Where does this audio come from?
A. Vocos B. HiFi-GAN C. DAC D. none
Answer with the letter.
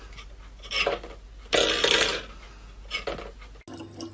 D